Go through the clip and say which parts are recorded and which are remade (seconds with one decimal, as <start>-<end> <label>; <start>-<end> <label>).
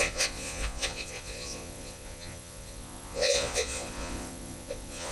0.0-5.1 remade